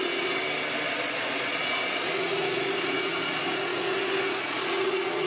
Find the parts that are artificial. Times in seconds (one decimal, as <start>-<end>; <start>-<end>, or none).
0.0-0.4; 0.9-5.3